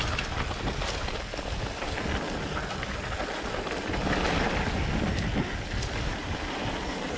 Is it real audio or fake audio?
real